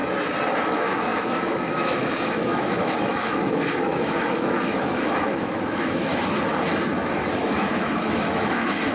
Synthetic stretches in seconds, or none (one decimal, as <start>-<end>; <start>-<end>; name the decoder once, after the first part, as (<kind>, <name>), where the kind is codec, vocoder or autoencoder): 0.6-6.1 (autoencoder, DAC-VAE); 7.4-8.9